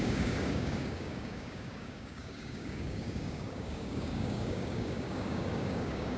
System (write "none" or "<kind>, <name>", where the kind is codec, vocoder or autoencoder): codec, DAC